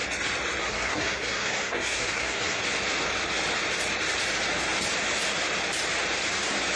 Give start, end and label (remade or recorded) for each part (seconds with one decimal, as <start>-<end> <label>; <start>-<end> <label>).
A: 0.0-0.6 recorded; 0.6-2.6 remade; 2.6-6.8 recorded